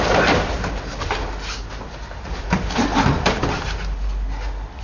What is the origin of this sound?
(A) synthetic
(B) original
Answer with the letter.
B